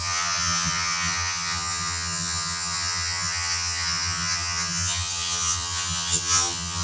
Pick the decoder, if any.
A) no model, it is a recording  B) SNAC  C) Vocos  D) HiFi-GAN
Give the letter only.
D